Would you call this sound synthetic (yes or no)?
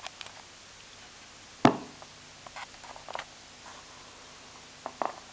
no